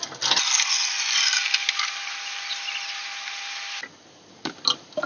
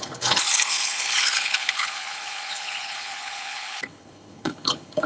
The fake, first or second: second